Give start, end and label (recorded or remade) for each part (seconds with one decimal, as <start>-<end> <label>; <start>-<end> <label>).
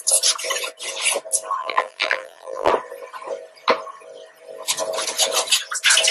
0.0-1.6 recorded; 1.6-2.7 remade; 2.7-6.1 recorded